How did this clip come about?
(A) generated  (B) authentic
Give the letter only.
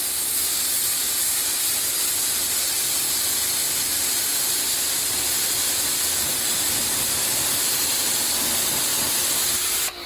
B